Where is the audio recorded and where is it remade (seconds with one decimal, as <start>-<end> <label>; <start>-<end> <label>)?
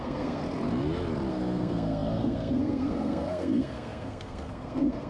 0.0-0.4 remade; 0.4-1.3 recorded; 1.3-5.1 remade